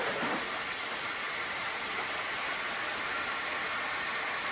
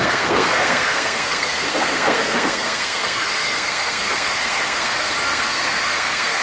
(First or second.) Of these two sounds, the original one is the first